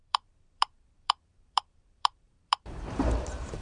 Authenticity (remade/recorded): remade